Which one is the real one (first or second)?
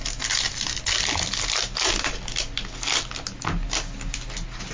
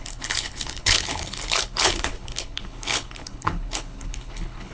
first